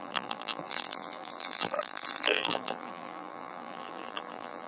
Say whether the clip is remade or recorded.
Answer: remade